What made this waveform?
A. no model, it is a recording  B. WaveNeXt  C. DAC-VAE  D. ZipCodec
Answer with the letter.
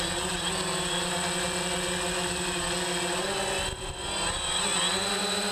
A